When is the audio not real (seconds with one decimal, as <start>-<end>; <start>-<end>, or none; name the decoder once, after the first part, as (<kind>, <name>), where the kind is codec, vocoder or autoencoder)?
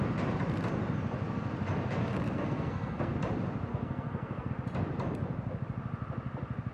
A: 2.1-3.1 (codec, SNAC); 3.7-4.5